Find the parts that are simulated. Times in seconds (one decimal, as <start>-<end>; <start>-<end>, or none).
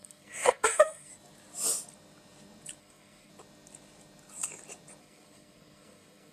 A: 0.0-1.1; 2.8-3.3; 5.0-6.3